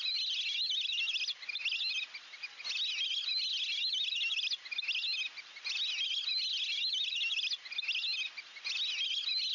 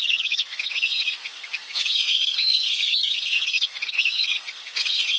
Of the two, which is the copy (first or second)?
second